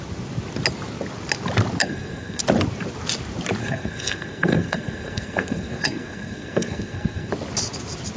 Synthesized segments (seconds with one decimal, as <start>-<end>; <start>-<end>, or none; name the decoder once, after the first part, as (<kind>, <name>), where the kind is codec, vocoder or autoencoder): 1.8-2.4 (codec, SNAC); 3.6-7.3